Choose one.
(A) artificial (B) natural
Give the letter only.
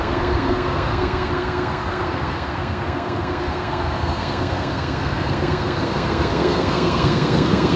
A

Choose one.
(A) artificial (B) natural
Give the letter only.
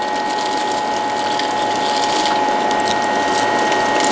B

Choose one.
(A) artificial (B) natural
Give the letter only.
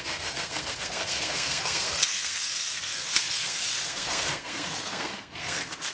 A